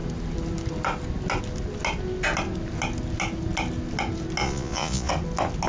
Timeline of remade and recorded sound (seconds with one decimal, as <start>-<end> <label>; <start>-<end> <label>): 0.0-4.4 recorded; 4.4-5.1 remade; 5.1-5.7 recorded